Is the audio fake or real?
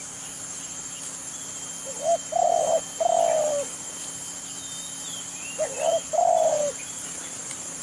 real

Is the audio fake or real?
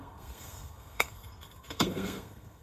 fake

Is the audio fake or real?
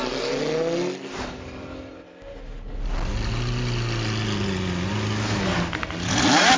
real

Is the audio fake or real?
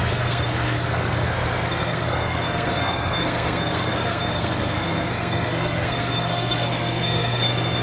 fake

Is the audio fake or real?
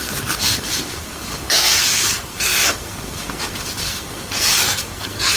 fake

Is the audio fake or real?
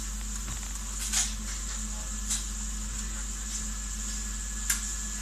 real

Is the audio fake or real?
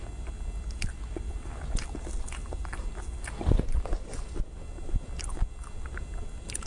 real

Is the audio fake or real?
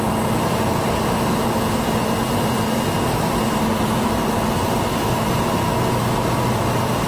real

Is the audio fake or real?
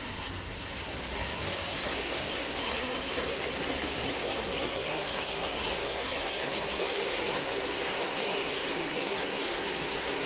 fake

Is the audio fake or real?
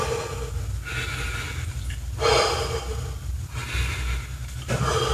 real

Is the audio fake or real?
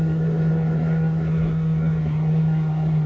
fake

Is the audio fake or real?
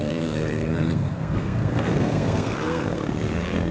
fake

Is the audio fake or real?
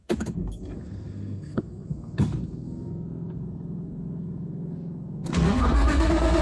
fake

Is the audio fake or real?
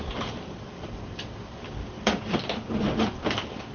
real